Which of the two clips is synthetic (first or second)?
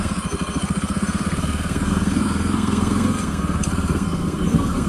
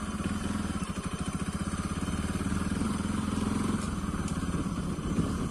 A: first